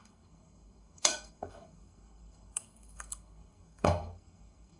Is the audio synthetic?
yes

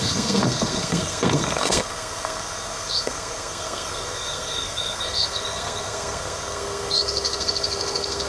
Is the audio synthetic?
yes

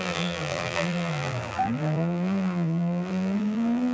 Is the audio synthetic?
yes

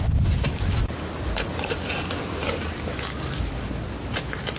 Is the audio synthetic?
no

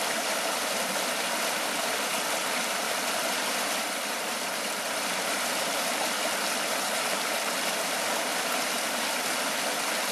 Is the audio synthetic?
yes